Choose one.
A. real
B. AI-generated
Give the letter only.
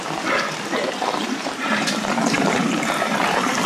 B